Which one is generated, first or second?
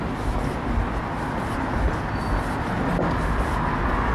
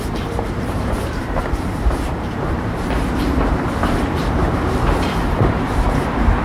second